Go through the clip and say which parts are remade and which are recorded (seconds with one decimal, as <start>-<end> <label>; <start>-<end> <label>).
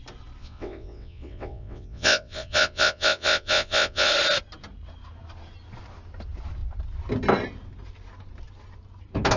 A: 0.0-0.4 recorded; 0.4-4.1 remade; 4.1-9.4 recorded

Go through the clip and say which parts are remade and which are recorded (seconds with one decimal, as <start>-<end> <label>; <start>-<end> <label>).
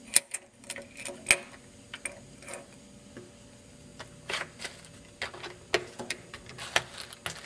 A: 0.0-7.5 recorded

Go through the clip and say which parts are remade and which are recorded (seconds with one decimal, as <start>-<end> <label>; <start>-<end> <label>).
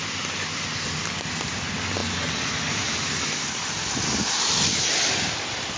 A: 0.0-5.8 recorded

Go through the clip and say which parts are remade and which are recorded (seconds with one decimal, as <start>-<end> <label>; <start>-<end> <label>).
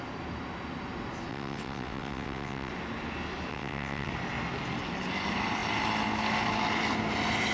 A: 0.0-1.3 recorded; 1.3-2.7 remade; 2.7-3.5 recorded; 3.5-4.1 remade; 4.1-7.5 recorded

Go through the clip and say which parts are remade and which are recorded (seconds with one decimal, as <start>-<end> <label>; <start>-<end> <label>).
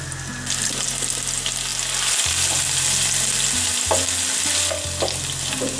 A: 0.0-5.8 recorded